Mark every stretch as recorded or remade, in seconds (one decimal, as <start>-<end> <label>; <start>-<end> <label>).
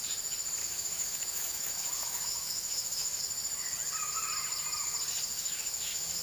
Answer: 0.0-0.6 recorded; 0.6-3.2 remade; 3.2-5.3 recorded; 5.3-6.2 remade